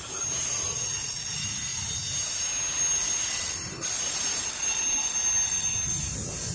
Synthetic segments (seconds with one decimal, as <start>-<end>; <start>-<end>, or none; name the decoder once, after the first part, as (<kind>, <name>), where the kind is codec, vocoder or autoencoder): none